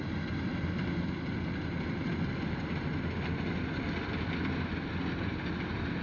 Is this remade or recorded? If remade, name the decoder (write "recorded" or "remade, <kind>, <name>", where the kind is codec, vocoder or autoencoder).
recorded